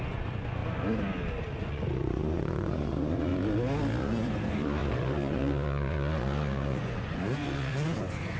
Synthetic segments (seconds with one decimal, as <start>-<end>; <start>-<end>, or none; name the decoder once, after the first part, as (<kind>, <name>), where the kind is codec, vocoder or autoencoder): 0.0-0.6 (vocoder, Vocos); 1.6-3.3; 4.0-8.4